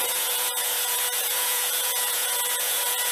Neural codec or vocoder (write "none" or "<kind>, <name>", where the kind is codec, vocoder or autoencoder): vocoder, Vocos